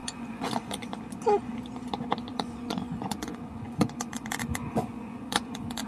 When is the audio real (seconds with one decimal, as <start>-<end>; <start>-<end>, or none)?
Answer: 1.0-2.3